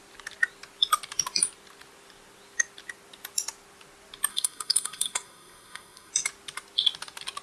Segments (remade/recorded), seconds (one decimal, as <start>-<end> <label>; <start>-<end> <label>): 0.0-4.3 recorded; 4.3-6.1 remade; 6.1-7.4 recorded